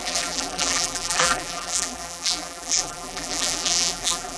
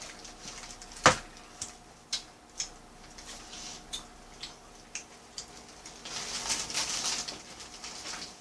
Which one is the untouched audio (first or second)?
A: second